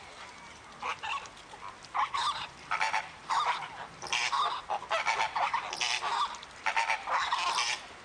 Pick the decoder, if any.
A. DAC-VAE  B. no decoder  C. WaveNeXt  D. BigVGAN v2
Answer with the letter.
D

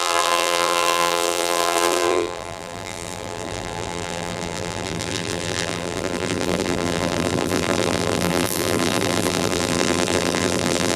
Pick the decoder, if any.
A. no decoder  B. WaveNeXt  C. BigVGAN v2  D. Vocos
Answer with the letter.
C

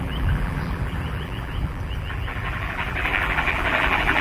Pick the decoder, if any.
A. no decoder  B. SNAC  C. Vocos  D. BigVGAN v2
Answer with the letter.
D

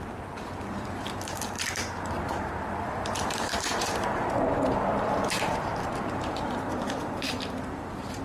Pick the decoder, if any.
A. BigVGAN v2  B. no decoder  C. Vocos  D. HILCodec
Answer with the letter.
A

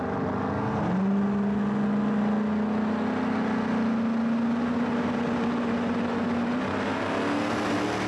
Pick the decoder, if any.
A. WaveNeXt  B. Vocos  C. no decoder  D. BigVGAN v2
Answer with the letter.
C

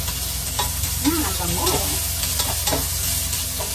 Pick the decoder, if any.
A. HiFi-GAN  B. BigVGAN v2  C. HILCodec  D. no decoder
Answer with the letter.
D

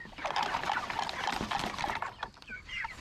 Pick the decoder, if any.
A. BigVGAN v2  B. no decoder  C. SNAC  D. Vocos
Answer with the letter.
B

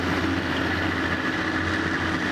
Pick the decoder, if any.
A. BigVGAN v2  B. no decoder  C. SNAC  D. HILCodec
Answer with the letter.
B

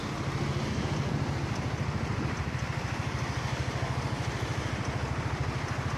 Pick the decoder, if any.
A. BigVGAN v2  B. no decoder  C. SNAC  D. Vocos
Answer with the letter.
B